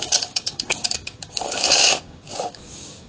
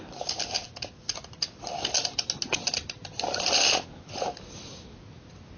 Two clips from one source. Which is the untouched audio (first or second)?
second